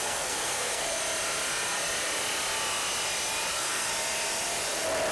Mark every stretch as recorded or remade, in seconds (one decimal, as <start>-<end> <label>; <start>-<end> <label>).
0.0-1.0 remade; 1.0-3.5 recorded; 3.5-3.9 remade; 3.9-5.1 recorded